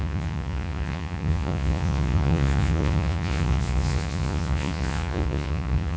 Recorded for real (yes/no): no